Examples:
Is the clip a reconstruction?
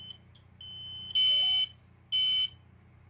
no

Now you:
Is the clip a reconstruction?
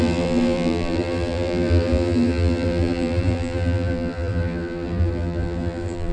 yes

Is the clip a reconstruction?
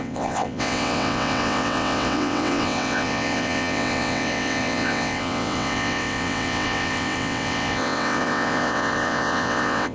yes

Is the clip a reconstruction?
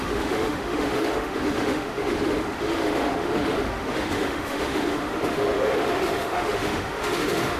yes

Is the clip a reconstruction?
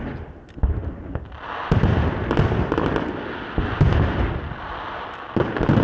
no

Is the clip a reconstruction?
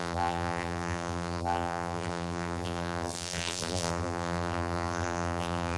yes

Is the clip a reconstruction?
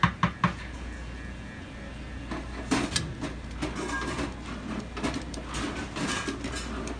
no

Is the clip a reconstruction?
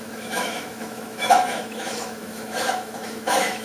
yes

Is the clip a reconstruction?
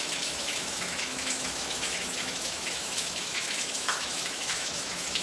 yes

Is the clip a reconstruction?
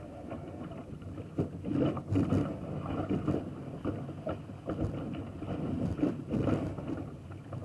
no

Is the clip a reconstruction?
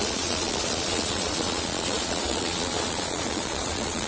yes